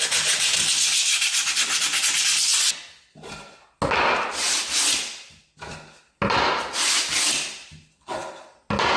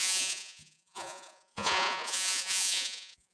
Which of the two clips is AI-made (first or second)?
second